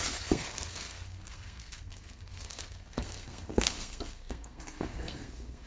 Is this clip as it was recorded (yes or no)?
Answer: no